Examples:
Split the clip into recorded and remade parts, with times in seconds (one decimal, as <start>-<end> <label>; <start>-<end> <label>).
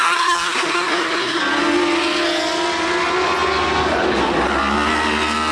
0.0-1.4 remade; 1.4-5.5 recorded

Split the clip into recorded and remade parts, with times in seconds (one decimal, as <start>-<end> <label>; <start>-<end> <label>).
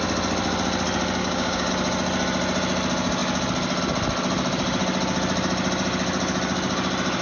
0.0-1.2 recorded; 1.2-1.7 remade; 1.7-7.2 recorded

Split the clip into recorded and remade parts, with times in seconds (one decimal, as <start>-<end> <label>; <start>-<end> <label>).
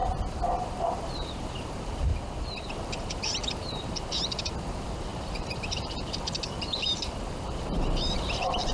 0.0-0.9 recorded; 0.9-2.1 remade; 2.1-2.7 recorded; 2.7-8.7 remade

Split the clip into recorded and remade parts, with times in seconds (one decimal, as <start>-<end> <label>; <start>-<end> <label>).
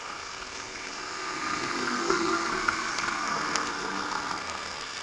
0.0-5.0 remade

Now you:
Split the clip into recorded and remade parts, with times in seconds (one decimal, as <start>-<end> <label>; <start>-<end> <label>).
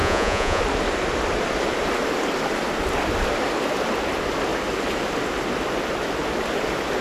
0.0-0.6 remade; 0.6-7.0 recorded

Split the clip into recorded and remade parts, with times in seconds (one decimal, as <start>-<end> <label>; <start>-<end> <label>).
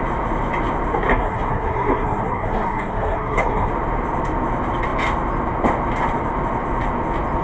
0.0-1.1 recorded; 1.1-3.7 remade; 3.7-7.4 recorded